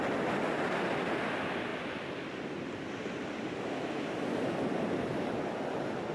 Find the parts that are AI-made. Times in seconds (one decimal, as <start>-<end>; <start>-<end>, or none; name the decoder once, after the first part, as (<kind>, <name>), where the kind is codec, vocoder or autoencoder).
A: 1.7-5.3 (vocoder, BigVGAN v2)